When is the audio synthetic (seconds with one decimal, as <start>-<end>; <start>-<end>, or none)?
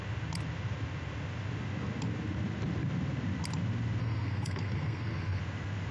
4.0-5.4